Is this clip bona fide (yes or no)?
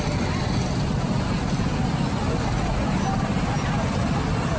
yes